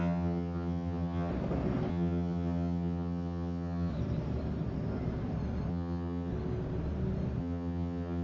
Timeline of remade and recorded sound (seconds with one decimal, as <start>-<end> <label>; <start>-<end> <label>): 0.0-1.3 remade; 1.3-1.9 recorded; 1.9-3.9 remade; 3.9-5.7 recorded; 5.7-6.3 remade; 6.3-7.4 recorded; 7.4-8.2 remade